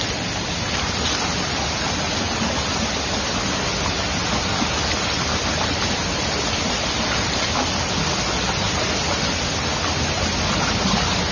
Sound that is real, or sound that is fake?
real